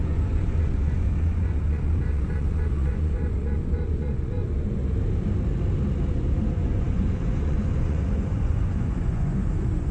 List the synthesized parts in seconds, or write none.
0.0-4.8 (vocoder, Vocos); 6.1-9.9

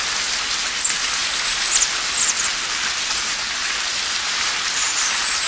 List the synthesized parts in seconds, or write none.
none

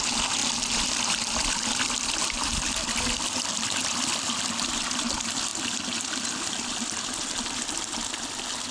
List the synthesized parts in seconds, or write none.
none

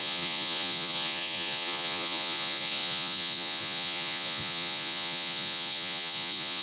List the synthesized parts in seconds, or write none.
0.0-6.6 (vocoder, Vocos)